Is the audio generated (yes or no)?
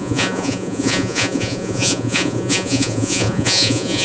yes